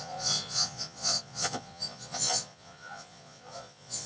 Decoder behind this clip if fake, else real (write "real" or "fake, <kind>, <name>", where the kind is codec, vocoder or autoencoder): fake, vocoder, Vocos